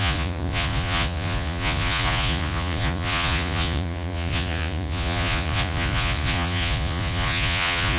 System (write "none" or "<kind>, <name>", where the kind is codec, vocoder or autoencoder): vocoder, Vocos